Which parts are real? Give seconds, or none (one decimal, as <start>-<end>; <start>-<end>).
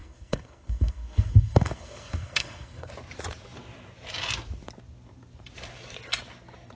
2.9-6.8